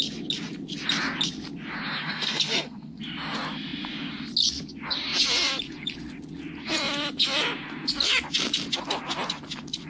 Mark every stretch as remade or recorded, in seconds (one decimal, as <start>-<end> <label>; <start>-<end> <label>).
0.0-2.0 recorded; 2.0-3.0 remade; 3.0-9.9 recorded

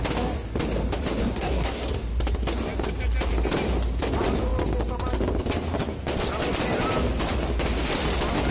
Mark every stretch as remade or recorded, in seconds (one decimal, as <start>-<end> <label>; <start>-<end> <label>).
0.0-1.2 recorded; 1.2-1.9 remade; 1.9-8.5 recorded

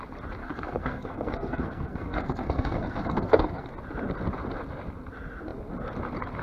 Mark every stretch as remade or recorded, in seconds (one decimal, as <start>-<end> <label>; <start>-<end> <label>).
0.0-0.4 recorded; 0.4-3.7 remade; 3.7-6.4 recorded

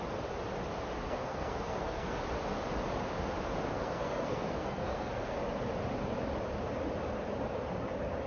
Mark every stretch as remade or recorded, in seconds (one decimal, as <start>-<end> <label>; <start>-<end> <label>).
0.0-1.0 recorded; 1.0-2.2 remade; 2.2-3.7 recorded; 3.7-5.4 remade; 5.4-8.3 recorded